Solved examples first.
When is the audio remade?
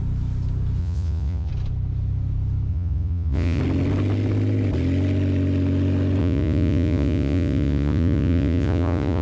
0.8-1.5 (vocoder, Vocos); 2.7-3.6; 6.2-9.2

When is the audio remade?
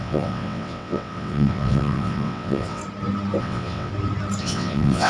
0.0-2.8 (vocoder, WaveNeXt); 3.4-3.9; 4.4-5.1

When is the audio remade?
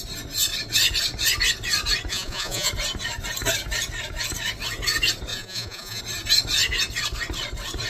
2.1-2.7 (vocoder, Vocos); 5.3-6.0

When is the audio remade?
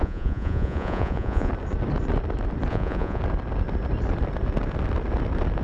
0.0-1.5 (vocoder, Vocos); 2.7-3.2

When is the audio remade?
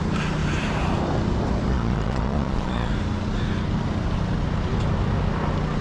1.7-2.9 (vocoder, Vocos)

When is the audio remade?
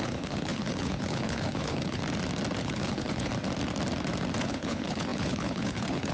0.0-2.0 (codec, HILCodec); 2.6-3.3; 4.4-6.1